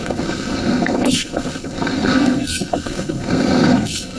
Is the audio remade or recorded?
remade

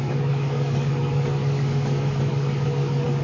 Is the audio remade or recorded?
remade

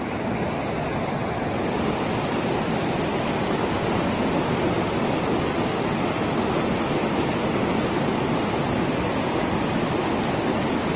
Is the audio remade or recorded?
recorded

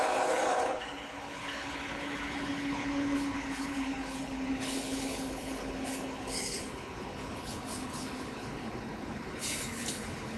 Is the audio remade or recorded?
remade